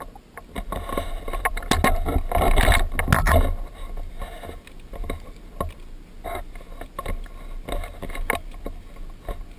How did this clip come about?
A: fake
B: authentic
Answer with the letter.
B